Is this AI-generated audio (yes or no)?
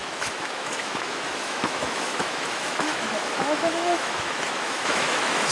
yes